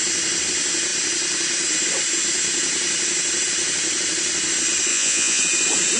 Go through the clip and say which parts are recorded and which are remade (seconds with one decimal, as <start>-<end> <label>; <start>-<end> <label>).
0.0-4.9 recorded; 4.9-5.4 remade; 5.4-6.0 recorded